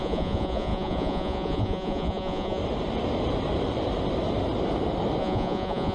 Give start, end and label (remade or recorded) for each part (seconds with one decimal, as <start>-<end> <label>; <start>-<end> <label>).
0.0-2.6 remade; 2.6-5.2 recorded; 5.2-5.9 remade